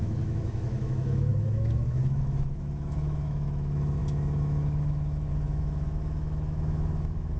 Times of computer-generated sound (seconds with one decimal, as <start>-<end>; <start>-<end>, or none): 0.0-7.4